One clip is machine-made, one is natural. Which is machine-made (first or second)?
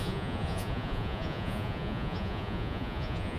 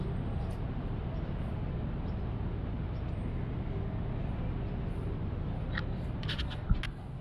first